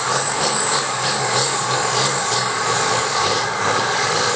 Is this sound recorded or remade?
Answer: remade